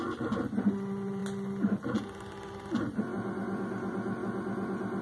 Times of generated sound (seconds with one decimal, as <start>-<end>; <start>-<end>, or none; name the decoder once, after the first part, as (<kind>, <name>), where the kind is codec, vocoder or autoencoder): none